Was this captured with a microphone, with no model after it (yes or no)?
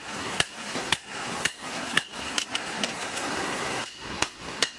no